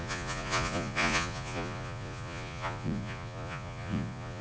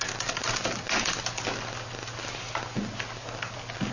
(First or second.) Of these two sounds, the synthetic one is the first